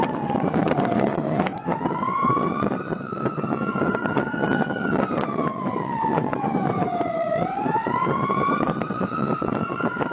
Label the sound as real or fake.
fake